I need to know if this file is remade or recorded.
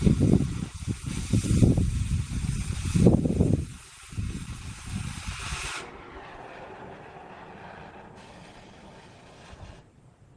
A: recorded